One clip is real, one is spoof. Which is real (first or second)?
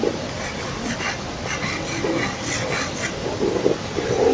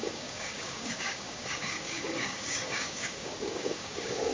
first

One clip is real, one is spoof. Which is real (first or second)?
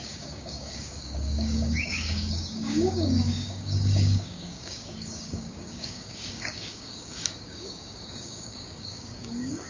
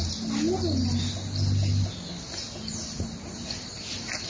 second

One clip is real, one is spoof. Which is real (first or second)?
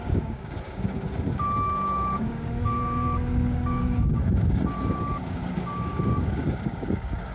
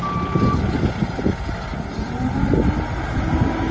second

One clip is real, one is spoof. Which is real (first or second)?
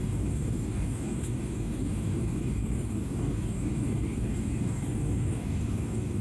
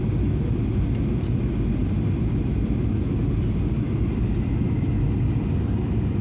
second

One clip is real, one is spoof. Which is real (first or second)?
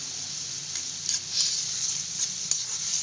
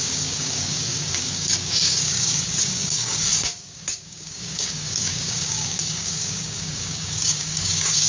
first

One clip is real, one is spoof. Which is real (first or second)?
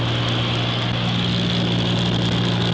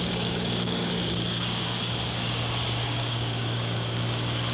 first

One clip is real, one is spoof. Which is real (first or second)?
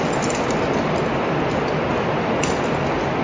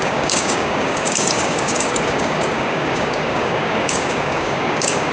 first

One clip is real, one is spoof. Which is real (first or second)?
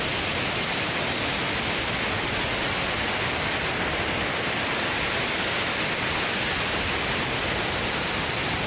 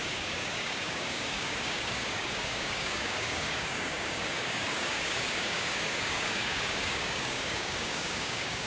first